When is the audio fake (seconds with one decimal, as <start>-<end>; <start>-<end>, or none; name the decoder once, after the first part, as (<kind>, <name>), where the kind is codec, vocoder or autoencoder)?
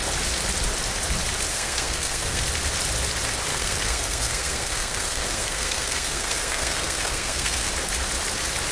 1.5-2.4 (codec, SNAC); 3.5-7.7